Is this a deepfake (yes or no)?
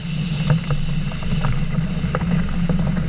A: no